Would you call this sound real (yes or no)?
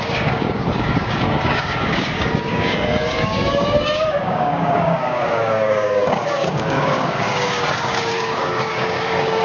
no